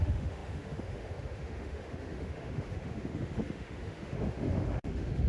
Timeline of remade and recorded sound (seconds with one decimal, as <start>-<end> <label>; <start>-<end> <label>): 0.0-5.3 remade